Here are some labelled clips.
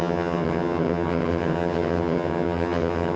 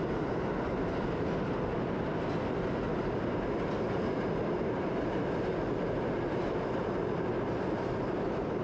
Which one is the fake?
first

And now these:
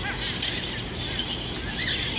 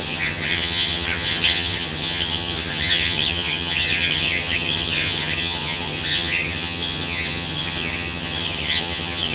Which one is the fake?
second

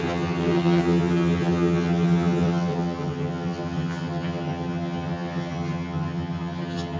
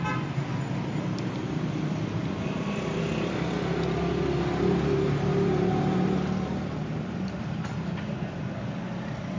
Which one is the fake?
first